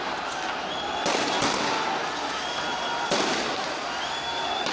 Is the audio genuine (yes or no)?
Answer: yes